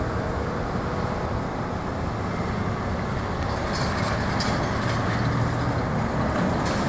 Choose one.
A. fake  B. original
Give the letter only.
B